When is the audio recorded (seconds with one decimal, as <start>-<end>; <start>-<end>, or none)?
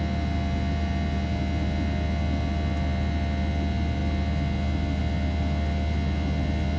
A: 0.0-6.8